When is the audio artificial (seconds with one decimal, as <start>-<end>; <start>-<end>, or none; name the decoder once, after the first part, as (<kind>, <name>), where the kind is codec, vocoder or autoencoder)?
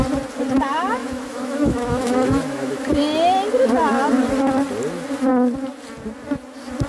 1.0-2.9 (autoencoder, DAC-VAE)